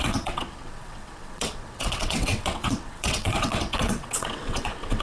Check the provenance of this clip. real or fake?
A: fake